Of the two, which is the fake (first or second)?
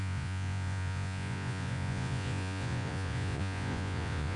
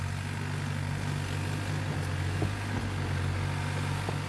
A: first